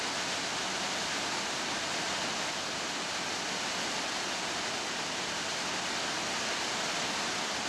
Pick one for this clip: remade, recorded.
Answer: recorded